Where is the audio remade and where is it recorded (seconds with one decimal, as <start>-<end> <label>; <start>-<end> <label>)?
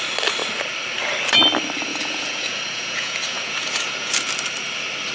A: 0.0-1.9 recorded; 1.9-4.3 remade; 4.3-5.1 recorded